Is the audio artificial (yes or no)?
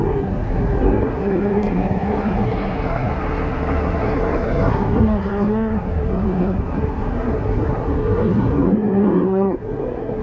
yes